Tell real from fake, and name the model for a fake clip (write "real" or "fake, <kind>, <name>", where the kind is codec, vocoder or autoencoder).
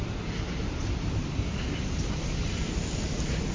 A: real